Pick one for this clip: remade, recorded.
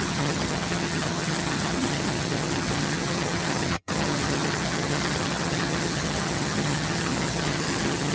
remade